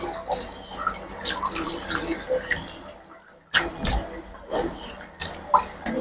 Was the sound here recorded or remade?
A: recorded